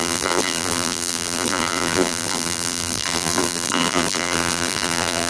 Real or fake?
fake